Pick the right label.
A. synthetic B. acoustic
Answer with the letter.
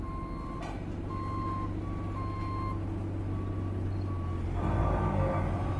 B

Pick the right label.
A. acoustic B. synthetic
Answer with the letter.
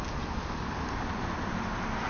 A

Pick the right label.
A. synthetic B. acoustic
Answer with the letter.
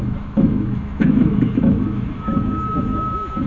A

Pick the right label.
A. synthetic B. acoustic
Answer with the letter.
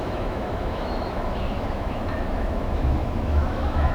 A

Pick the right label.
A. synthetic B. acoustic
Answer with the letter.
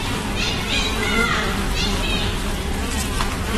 B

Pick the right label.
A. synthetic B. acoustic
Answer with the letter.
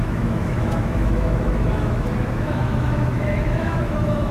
A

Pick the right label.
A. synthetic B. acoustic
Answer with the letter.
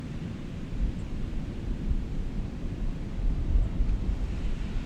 B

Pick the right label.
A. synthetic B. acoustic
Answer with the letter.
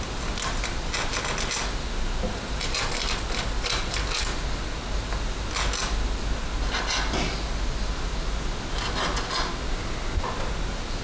B